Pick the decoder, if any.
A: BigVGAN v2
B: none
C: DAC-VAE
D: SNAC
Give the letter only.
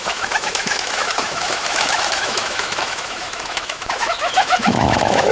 C